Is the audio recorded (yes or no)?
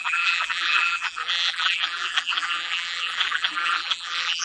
no